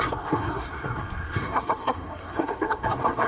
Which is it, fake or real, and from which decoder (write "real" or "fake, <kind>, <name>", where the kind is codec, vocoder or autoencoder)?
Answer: fake, codec, SNAC